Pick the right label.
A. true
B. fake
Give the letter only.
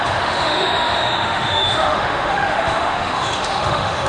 B